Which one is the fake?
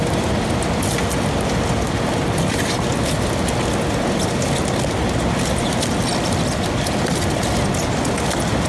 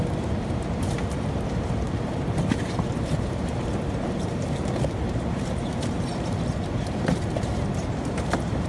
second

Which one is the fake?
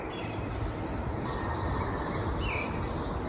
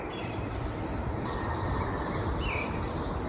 second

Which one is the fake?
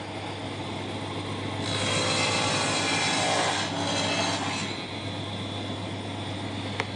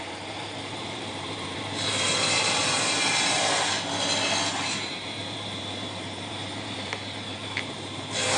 second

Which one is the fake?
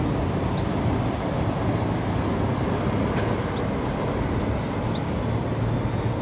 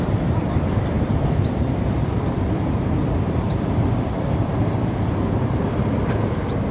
second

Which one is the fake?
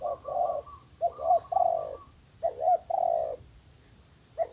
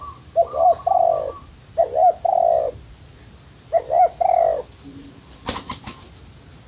first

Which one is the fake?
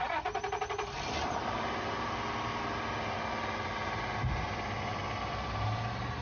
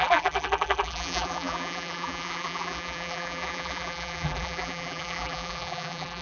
second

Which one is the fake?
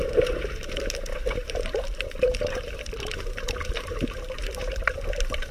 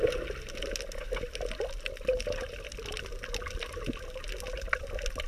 first